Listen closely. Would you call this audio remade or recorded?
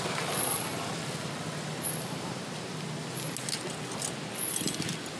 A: recorded